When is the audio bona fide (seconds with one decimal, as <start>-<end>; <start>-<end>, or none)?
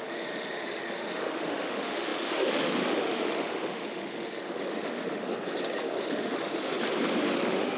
5.3-5.8; 6.7-7.3